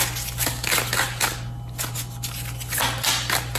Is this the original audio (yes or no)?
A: yes